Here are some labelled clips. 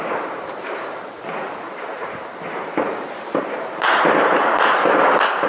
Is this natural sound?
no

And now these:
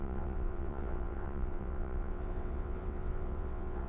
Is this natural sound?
no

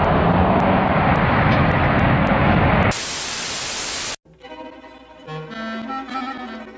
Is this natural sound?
yes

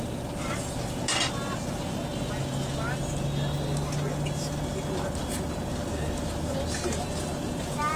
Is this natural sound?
yes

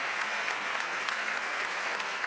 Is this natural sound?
no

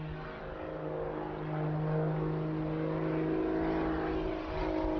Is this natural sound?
yes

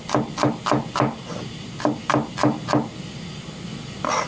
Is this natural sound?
yes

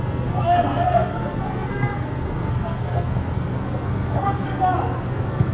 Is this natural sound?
no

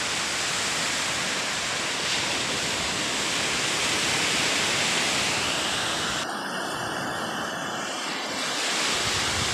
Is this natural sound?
yes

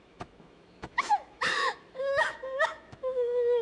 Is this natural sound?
no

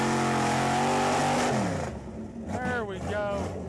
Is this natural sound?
yes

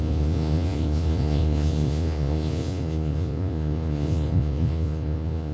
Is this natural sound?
no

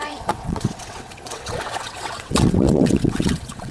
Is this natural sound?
no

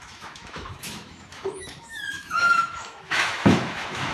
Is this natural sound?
no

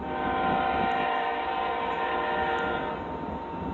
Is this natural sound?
yes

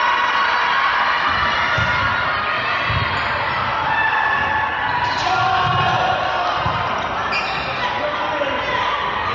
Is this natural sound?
yes